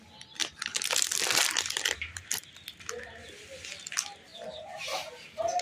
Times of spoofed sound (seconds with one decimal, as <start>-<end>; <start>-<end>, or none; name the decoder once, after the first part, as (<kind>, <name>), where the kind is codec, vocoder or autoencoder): none